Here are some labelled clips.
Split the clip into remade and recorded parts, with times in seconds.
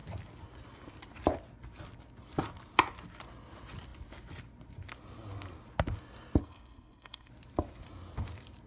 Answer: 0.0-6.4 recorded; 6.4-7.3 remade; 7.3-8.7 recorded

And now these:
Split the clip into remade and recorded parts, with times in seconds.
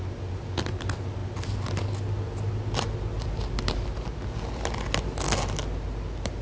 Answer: 0.0-6.4 recorded